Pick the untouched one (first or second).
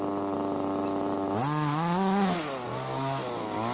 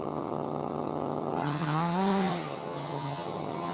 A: first